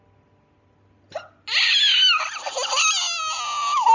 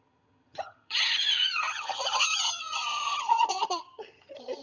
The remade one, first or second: second